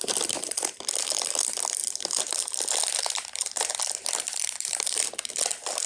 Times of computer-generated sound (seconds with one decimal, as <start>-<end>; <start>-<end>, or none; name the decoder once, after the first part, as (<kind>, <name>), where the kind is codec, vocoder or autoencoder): 0.0-5.9 (vocoder, BigVGAN v2)